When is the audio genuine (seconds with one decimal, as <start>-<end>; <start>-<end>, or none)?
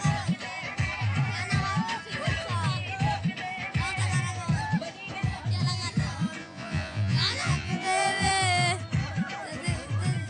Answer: 0.0-6.4; 8.3-10.3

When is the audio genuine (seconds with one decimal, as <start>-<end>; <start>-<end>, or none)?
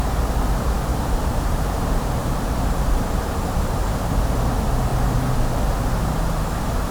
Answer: 4.9-6.1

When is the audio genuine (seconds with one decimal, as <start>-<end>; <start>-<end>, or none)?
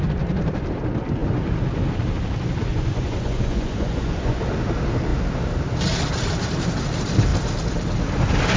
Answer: 0.0-2.7; 4.4-8.6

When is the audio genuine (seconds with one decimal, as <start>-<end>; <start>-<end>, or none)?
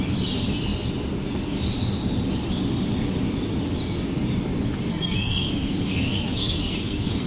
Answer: 0.0-4.9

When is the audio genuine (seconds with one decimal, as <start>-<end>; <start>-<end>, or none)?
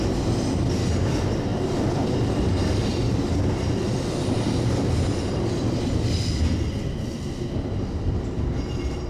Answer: 0.0-1.5; 2.8-9.1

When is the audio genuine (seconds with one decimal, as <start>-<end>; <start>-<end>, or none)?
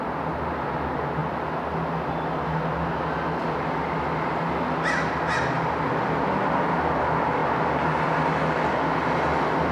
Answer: 0.0-9.7